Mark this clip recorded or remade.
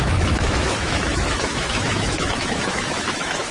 remade